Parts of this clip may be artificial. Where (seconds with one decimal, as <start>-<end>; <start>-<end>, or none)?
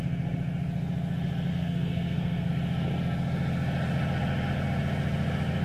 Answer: 1.5-2.5